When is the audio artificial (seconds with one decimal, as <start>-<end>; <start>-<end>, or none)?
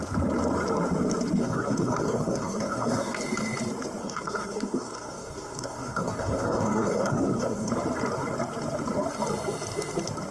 1.4-3.2; 4.0-7.7